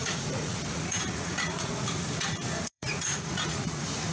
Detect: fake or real fake